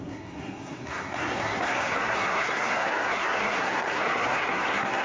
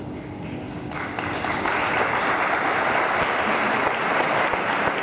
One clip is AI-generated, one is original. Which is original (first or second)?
second